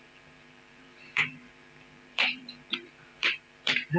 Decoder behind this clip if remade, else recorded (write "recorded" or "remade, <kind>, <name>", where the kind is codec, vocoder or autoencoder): remade, vocoder, BigVGAN v2